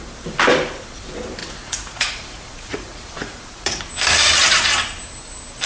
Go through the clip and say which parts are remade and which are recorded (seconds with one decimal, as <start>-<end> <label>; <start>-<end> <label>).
0.0-1.4 recorded; 1.4-3.8 remade; 3.8-5.7 recorded

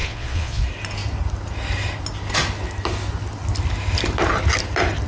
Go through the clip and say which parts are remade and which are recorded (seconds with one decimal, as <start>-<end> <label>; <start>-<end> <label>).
0.0-0.6 remade; 0.6-5.1 recorded

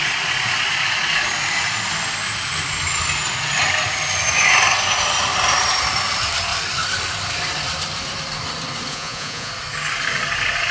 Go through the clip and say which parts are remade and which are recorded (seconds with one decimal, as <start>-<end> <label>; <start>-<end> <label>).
0.0-8.9 recorded; 8.9-9.5 remade; 9.5-10.7 recorded